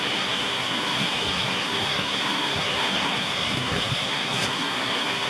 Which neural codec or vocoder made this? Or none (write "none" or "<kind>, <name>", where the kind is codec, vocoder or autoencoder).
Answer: codec, SNAC